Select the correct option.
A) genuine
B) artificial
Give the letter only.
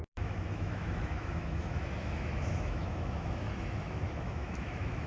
B